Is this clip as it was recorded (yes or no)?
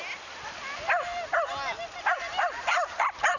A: yes